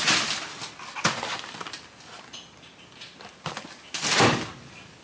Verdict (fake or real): real